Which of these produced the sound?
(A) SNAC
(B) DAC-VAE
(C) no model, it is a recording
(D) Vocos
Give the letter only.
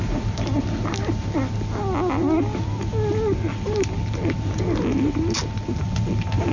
C